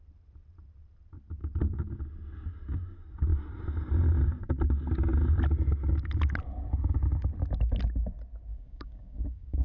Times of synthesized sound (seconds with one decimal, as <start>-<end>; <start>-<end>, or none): 8.5-9.6